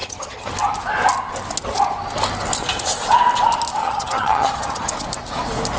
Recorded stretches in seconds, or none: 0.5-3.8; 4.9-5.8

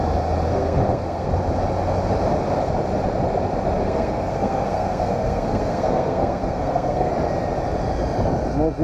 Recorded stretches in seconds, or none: 0.0-0.5; 1.3-3.8; 7.1-8.8

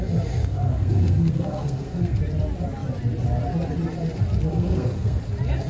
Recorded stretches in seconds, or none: 0.0-0.4; 2.2-4.5; 5.2-5.7

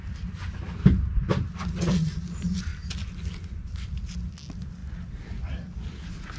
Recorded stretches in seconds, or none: 0.0-6.4

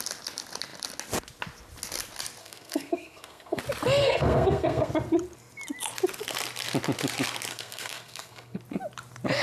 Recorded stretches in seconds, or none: 0.0-2.4; 3.6-4.0; 4.9-7.5; 8.6-9.4

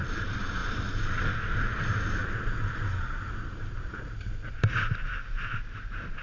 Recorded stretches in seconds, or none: 0.0-6.2

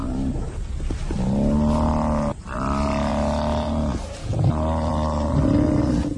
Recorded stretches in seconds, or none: 0.0-6.2

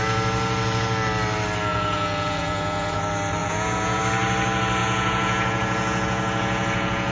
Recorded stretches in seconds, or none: 0.0-1.7; 3.0-3.4; 4.0-4.8